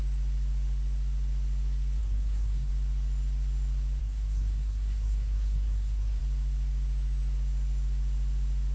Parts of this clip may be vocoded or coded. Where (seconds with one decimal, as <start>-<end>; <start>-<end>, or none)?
2.0-2.7; 4.0-6.2

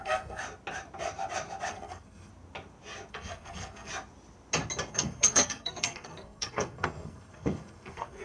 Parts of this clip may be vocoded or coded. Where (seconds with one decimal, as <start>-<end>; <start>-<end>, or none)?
0.0-0.4; 1.7-2.3; 3.1-3.9; 4.9-8.2